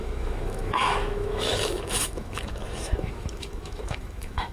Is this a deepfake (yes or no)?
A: yes